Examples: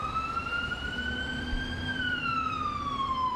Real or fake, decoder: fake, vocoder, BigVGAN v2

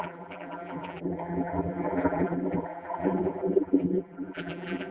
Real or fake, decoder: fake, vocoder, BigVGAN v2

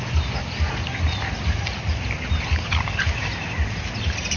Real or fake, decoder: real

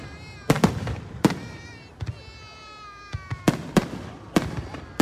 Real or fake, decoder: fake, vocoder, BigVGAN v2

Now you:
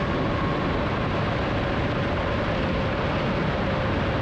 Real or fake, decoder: real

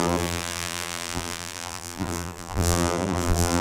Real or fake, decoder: fake, vocoder, BigVGAN v2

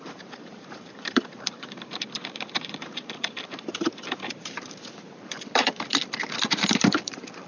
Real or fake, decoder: fake, vocoder, BigVGAN v2